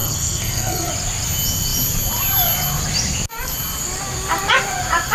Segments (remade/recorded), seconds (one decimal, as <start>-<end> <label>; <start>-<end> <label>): 0.0-0.9 remade; 0.9-5.1 recorded